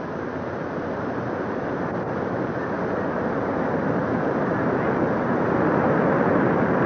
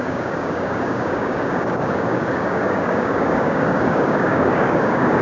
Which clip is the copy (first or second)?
second